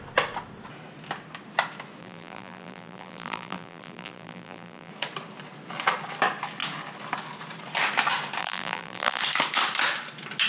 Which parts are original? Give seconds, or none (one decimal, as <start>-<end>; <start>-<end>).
0.0-2.0; 4.9-8.4; 9.2-10.5